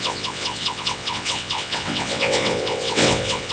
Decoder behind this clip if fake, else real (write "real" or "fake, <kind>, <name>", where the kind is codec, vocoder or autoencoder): fake, vocoder, WaveNeXt